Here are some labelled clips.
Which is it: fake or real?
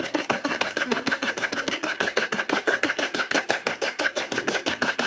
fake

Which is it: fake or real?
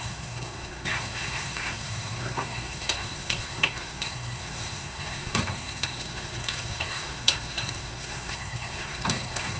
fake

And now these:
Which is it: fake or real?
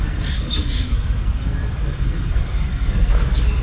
fake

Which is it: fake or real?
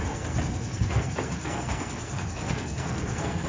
fake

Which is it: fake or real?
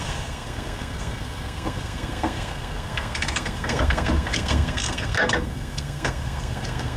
fake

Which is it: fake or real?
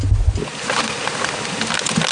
real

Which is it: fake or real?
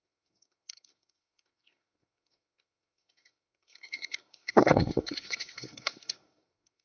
fake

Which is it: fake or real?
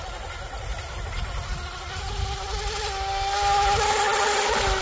real